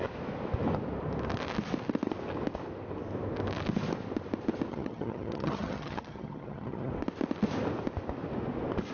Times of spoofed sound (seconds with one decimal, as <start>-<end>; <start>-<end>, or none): 4.7-6.9